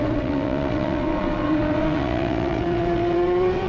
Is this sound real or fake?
fake